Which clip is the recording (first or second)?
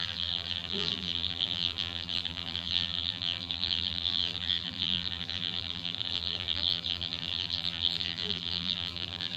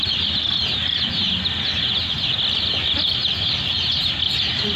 second